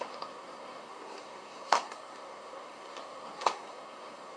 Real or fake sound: fake